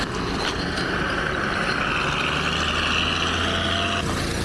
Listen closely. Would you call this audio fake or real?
real